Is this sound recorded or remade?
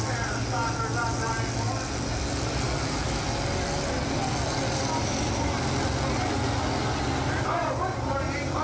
recorded